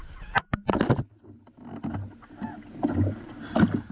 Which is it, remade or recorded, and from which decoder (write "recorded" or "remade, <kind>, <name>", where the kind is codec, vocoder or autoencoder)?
recorded